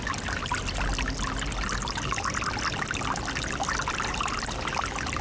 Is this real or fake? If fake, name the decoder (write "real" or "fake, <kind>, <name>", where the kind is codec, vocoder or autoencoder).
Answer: real